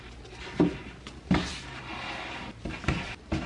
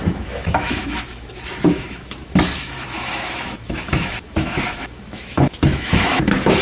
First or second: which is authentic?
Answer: first